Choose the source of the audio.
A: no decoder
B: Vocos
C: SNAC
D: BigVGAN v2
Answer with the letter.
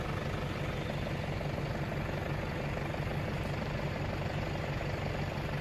A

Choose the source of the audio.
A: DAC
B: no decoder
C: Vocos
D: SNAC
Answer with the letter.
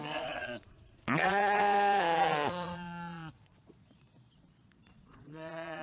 C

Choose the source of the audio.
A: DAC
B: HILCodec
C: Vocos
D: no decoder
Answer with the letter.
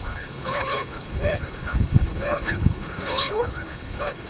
B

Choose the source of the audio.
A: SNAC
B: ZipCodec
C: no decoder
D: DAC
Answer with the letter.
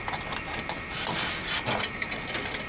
C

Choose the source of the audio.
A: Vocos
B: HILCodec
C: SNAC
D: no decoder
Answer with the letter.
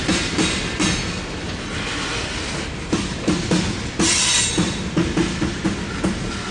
D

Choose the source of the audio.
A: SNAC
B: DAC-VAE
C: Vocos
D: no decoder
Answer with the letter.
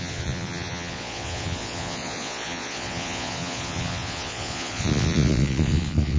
C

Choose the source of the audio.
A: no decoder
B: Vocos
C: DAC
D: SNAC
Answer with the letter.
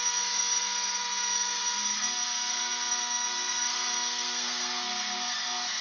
D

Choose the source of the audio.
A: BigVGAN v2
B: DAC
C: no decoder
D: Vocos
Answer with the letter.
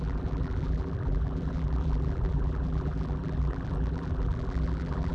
A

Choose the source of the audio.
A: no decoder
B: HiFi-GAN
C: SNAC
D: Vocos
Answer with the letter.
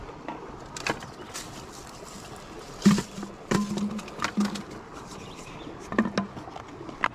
A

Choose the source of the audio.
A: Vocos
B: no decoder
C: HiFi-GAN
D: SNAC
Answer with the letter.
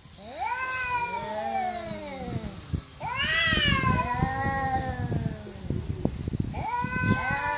B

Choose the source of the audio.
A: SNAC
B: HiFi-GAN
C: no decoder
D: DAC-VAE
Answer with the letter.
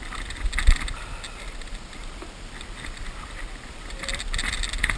C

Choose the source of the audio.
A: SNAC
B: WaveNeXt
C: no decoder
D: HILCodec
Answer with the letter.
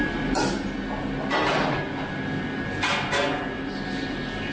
C